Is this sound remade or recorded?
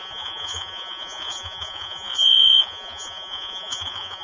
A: remade